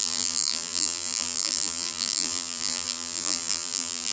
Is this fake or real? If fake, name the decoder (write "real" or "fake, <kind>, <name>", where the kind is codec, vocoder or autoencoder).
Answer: fake, vocoder, BigVGAN v2